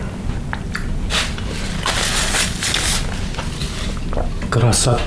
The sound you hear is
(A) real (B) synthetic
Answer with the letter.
A